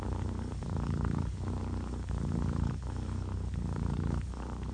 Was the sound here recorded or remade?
remade